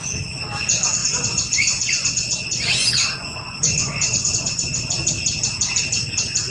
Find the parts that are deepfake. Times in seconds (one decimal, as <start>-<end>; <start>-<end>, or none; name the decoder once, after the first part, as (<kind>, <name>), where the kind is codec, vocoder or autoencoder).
1.0-4.9 (vocoder, Vocos)